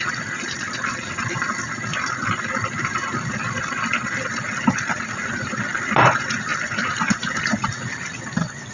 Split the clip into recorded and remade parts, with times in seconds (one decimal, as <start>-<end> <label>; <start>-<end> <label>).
0.0-8.7 recorded